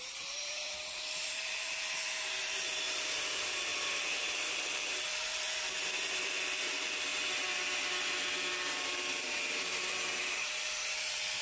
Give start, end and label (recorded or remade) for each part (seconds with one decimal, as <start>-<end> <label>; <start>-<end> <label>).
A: 0.0-7.1 remade; 7.1-8.5 recorded; 8.5-11.4 remade